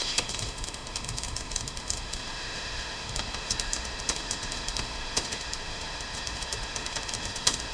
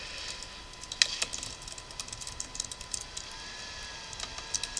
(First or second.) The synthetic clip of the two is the first